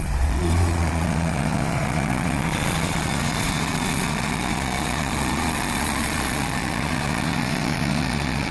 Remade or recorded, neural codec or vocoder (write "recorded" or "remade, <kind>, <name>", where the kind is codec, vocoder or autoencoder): remade, vocoder, Vocos